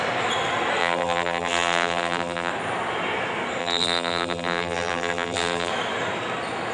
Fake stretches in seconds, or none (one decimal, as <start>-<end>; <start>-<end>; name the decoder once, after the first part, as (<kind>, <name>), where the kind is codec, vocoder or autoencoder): 0.8-2.5 (vocoder, BigVGAN v2); 3.6-5.7